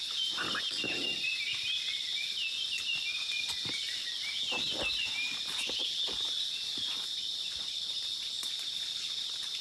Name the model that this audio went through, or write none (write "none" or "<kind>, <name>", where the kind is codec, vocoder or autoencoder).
none